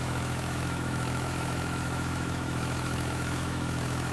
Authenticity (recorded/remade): remade